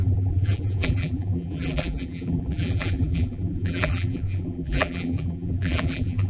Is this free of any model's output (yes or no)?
no